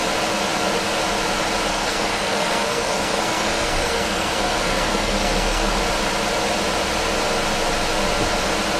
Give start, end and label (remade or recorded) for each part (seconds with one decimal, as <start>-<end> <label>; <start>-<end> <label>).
0.0-1.7 recorded; 1.7-5.8 remade; 5.8-8.8 recorded